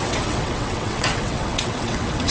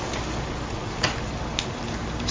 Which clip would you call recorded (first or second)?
second